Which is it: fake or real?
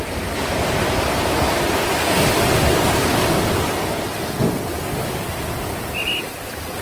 real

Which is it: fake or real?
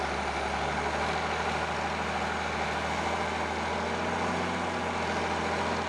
real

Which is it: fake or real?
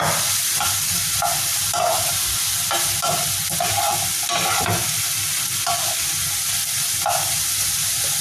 real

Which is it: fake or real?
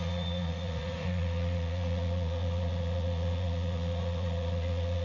fake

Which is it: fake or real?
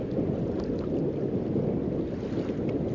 real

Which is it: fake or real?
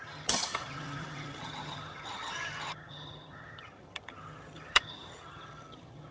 fake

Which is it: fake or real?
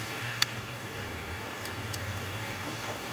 fake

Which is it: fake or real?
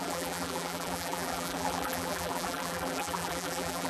fake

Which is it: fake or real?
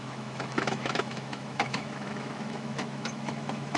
fake